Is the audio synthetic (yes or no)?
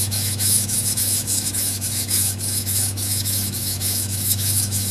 yes